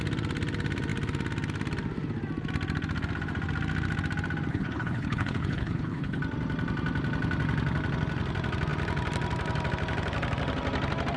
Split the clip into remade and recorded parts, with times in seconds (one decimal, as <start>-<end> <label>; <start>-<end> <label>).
0.0-4.5 recorded; 4.5-6.2 remade; 6.2-11.2 recorded